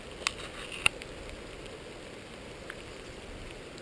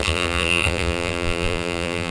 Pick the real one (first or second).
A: first